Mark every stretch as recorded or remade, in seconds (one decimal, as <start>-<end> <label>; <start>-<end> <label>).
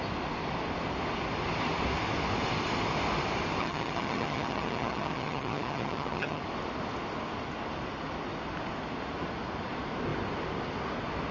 0.0-3.6 recorded; 3.6-6.4 remade; 6.4-11.3 recorded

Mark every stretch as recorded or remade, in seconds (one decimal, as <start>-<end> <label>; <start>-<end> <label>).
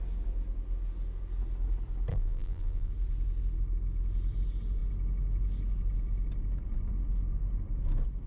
0.0-2.1 recorded; 2.1-2.9 remade; 2.9-8.3 recorded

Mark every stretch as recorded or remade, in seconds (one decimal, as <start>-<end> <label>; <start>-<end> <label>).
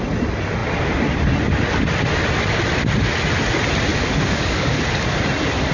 0.0-3.9 recorded; 3.9-4.8 remade; 4.8-5.7 recorded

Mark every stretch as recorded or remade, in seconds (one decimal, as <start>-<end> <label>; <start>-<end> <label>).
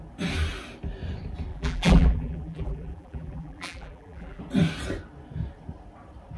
0.0-1.5 recorded; 1.5-4.4 remade; 4.4-6.4 recorded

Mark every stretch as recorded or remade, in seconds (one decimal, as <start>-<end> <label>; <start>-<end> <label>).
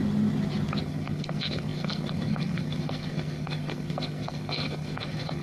0.0-0.8 recorded; 0.8-5.4 remade